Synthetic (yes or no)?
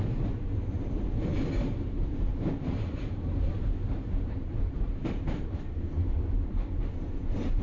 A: yes